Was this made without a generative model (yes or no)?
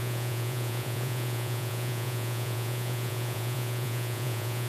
no